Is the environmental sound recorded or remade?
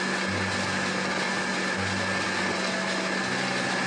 recorded